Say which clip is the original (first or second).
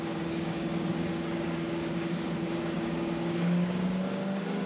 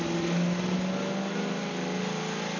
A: second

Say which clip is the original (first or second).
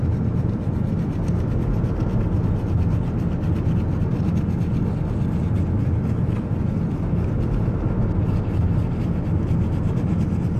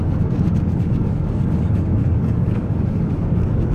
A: first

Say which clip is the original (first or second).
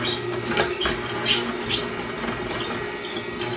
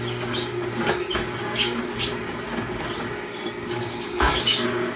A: first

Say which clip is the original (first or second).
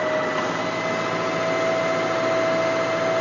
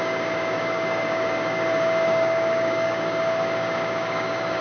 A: first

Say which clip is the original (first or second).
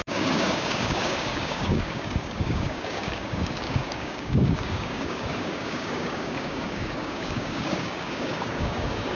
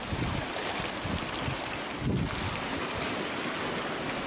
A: second